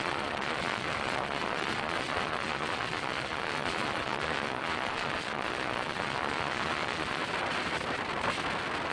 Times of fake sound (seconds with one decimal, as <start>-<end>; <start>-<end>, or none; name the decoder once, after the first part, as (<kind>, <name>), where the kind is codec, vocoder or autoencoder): 0.0-7.2 (vocoder, Vocos)